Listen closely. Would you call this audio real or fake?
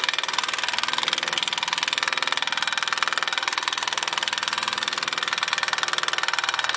real